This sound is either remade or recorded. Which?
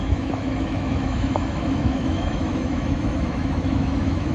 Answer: remade